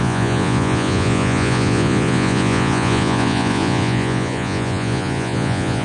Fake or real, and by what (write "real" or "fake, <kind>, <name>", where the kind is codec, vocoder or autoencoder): fake, vocoder, Vocos